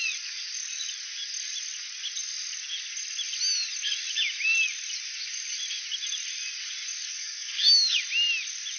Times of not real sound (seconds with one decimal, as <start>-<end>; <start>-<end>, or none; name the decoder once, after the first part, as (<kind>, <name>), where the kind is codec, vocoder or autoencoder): 7.1-8.0 (codec, DAC)